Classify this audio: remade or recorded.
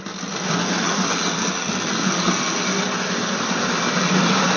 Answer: recorded